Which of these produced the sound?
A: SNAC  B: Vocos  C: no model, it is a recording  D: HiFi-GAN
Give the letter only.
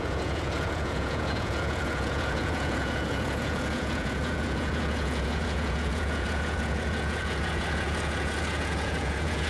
B